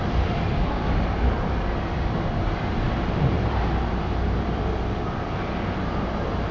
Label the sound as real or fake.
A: fake